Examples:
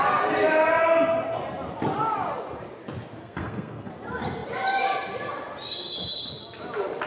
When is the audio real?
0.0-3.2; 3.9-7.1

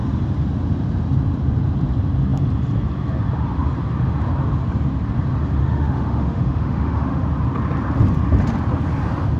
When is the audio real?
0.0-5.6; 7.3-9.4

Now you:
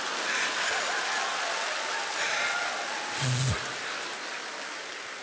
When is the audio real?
0.0-5.2

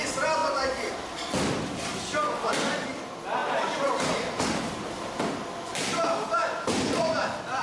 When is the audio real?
0.0-0.4; 0.9-3.4; 5.0-6.4; 7.0-7.6

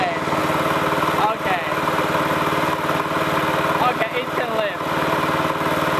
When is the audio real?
0.0-6.0

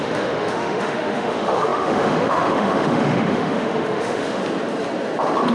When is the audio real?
4.4-5.5

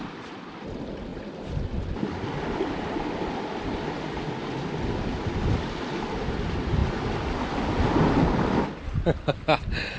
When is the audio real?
0.0-10.0

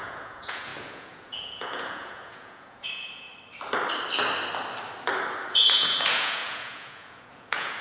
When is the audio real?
3.3-5.5